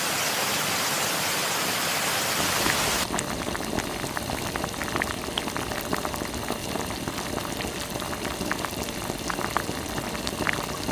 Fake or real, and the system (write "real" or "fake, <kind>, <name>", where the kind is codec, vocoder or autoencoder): real